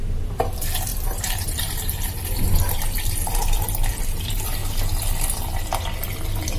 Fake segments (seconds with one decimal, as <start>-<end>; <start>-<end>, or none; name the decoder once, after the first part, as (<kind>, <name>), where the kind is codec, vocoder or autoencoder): 0.0-4.6 (vocoder, BigVGAN v2)